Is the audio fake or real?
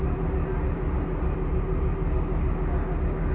real